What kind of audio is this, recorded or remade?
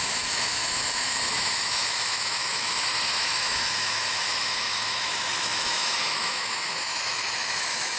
remade